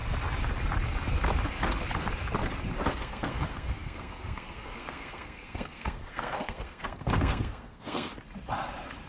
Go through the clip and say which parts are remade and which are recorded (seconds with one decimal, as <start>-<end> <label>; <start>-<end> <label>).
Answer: 0.0-2.9 recorded; 2.9-8.1 remade; 8.1-9.1 recorded